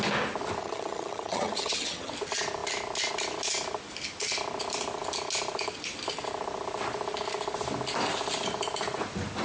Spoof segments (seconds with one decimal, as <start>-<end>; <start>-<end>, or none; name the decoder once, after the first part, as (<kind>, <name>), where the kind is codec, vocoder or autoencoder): 0.6-2.1 (vocoder, HiFi-GAN)